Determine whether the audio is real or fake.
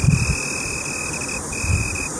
real